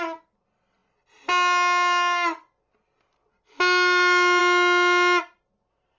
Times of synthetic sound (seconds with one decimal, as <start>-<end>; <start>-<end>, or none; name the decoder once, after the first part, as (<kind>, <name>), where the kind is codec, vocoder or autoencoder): none